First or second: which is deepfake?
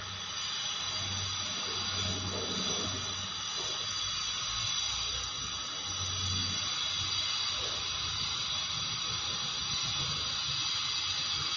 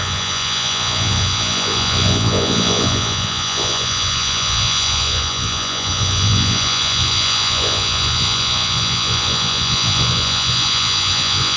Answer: second